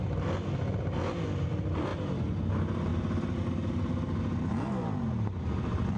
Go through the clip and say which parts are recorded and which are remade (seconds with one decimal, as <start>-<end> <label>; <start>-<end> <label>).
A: 0.0-6.0 recorded